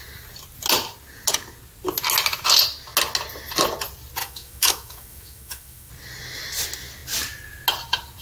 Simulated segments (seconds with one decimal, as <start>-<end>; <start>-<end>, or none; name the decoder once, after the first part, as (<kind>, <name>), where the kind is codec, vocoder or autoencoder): 4.2-5.9 (autoencoder, DAC-VAE)